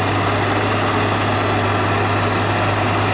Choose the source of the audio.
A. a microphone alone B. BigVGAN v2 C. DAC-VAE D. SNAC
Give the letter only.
A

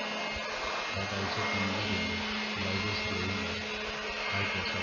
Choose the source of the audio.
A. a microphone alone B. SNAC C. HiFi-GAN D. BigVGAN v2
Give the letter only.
A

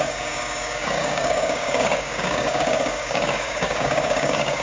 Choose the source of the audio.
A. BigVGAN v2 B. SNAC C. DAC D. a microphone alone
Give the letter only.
C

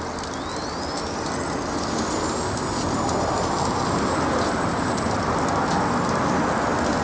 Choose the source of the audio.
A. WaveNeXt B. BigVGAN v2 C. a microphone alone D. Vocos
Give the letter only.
C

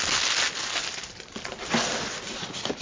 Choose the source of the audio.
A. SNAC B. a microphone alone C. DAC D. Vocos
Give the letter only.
B